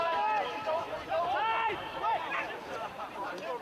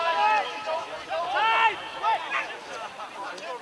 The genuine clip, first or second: second